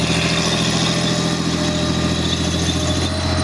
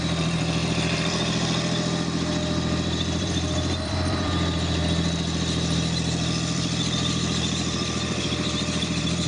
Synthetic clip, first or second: second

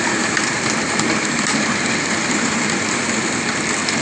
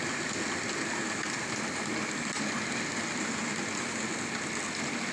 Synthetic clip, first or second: first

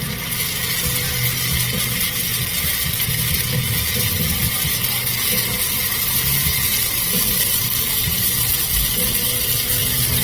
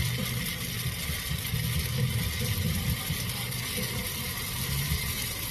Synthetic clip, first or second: second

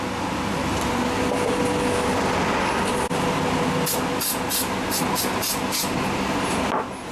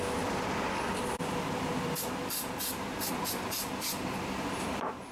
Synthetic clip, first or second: second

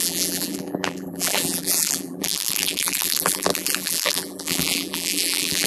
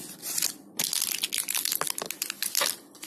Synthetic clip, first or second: first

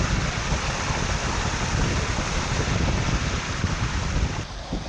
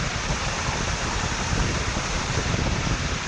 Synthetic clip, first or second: second